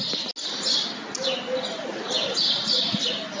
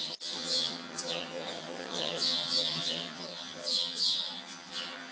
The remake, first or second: second